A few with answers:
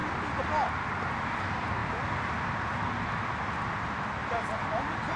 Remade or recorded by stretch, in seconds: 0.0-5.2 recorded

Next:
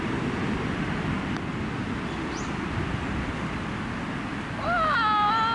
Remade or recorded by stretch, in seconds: 0.0-5.5 recorded

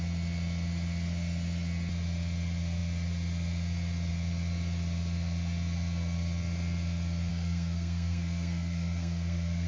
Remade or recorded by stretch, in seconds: 0.0-7.3 recorded; 7.3-9.7 remade

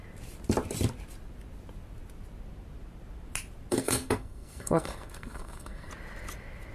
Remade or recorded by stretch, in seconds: 0.0-3.7 recorded; 3.7-5.9 remade; 5.9-6.7 recorded

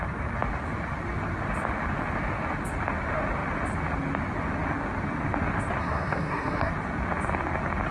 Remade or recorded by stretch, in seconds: 0.0-5.8 recorded; 5.8-6.7 remade; 6.7-7.9 recorded